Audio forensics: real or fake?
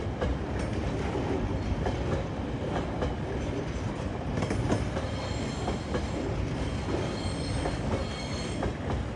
real